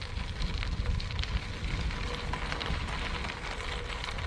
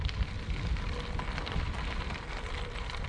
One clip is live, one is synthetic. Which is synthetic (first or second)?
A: second